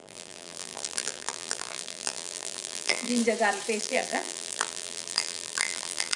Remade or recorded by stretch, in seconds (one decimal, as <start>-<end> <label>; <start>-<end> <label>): 0.0-3.2 remade; 3.2-3.8 recorded; 3.8-6.2 remade